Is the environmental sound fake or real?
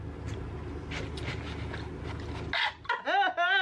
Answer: real